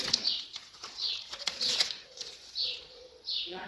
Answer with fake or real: fake